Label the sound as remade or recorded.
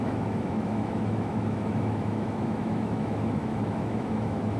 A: remade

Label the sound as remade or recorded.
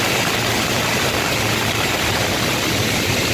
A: recorded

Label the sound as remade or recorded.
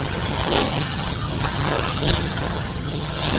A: remade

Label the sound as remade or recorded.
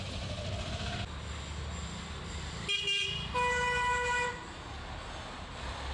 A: recorded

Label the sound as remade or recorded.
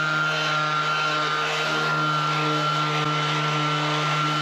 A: recorded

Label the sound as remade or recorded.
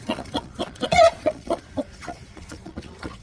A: remade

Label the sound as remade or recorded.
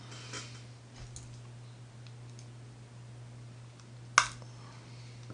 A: recorded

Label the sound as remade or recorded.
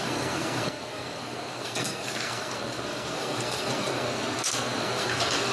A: remade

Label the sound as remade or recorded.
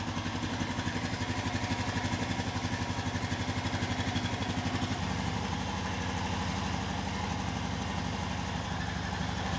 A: recorded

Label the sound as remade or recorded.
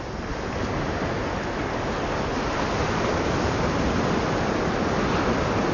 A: recorded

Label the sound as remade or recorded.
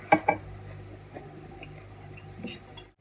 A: recorded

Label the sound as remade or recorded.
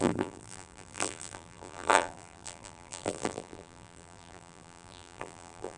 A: remade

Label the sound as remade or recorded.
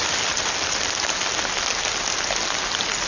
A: recorded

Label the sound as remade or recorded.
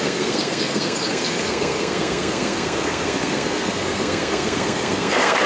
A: remade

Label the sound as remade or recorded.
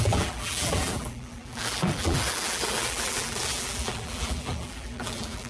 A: remade